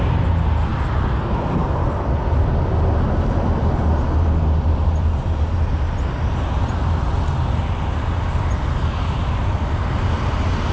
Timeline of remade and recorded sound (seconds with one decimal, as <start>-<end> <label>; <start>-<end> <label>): 0.0-10.7 recorded